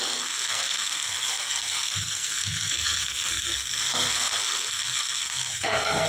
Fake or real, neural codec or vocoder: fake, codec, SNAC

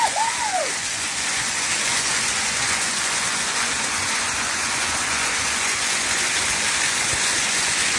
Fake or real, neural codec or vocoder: fake, vocoder, Vocos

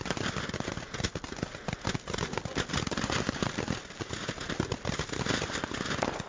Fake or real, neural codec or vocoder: real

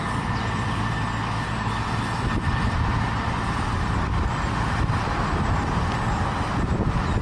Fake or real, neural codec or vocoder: real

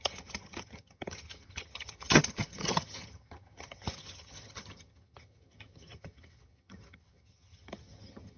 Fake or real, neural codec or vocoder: fake, vocoder, HiFi-GAN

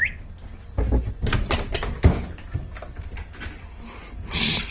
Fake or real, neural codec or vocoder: real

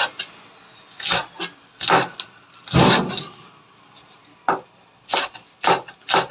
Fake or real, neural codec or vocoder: real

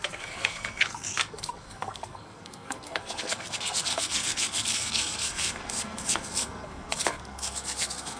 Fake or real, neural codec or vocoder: fake, codec, SNAC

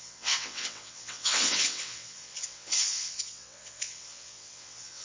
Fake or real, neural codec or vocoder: fake, vocoder, WaveNeXt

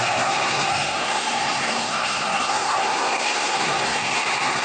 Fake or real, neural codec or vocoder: fake, codec, SNAC